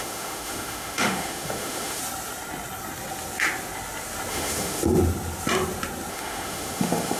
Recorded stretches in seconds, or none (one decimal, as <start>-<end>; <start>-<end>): 2.0-4.3; 4.8-6.1